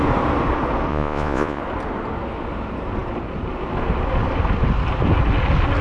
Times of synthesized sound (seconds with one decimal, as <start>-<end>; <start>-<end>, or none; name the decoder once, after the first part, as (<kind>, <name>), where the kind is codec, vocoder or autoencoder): 0.9-1.6 (vocoder, Vocos)